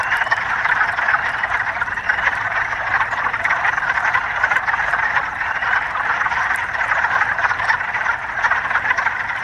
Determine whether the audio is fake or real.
fake